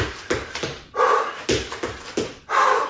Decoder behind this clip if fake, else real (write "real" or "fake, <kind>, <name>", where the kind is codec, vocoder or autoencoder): real